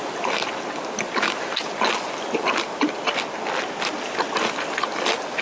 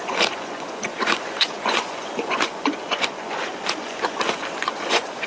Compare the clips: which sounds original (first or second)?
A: first